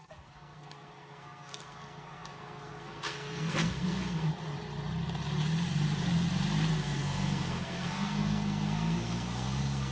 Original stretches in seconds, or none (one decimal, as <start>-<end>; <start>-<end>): 4.3-6.7